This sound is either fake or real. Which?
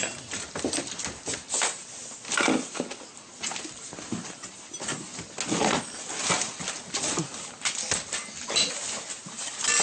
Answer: real